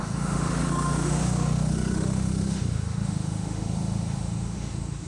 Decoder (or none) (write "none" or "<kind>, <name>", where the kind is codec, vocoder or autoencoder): autoencoder, DAC-VAE